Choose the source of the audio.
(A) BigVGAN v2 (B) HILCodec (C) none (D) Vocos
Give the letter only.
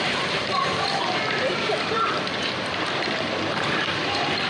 A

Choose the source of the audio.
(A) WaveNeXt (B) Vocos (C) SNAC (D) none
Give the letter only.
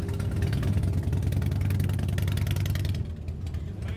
D